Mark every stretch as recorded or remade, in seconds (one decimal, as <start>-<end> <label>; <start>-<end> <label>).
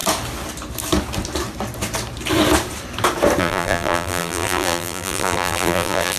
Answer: 0.0-3.4 recorded; 3.4-6.2 remade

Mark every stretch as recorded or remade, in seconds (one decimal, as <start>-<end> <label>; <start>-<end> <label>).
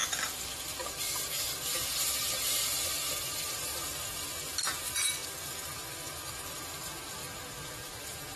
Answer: 0.0-8.4 recorded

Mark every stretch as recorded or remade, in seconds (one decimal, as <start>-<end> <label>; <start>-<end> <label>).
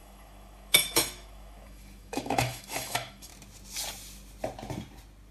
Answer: 0.0-3.3 remade; 3.3-5.3 recorded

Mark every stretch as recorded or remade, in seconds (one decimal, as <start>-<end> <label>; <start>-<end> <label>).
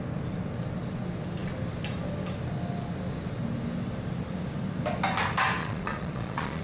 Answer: 0.0-5.6 recorded; 5.6-6.6 remade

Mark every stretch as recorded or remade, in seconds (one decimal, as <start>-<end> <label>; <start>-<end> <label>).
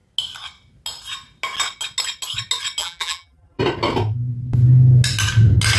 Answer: 0.0-2.8 recorded; 2.8-3.6 remade; 3.6-5.8 recorded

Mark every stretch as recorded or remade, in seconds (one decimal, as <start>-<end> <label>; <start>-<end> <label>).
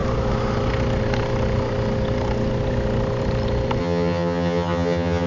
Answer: 0.0-3.8 recorded; 3.8-5.3 remade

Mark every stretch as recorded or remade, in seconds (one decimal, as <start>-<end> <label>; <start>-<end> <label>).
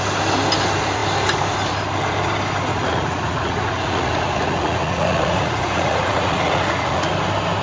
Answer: 0.0-2.7 recorded; 2.7-7.1 remade; 7.1-7.6 recorded